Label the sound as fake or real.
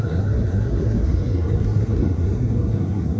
fake